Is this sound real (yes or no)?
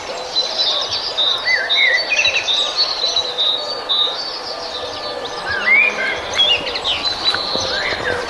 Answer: yes